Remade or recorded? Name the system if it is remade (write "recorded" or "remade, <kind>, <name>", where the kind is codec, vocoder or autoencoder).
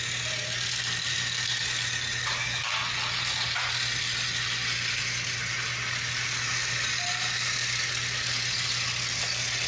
recorded